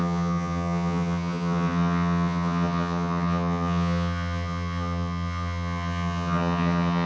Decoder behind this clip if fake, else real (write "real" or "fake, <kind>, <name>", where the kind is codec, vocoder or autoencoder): fake, vocoder, HiFi-GAN